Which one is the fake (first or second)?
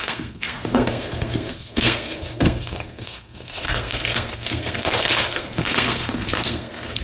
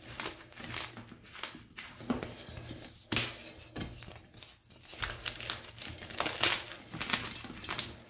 first